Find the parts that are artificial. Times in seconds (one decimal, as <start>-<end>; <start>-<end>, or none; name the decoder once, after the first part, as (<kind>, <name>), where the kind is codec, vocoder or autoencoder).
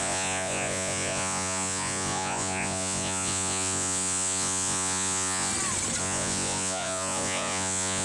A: 0.0-5.5 (vocoder, Vocos); 6.0-8.0